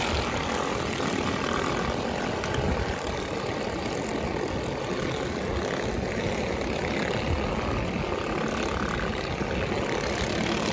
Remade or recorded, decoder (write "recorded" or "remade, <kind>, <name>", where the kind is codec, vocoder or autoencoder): recorded